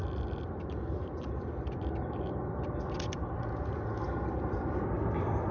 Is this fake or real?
real